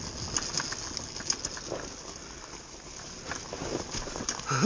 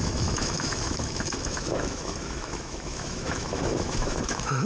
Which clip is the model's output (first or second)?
second